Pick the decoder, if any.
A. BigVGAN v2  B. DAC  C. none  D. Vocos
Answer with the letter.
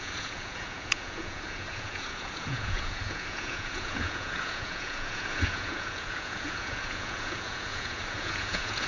D